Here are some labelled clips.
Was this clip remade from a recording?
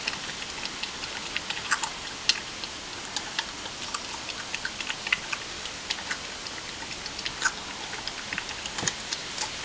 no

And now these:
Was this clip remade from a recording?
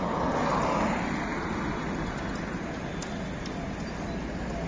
no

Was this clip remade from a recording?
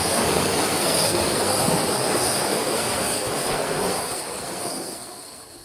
yes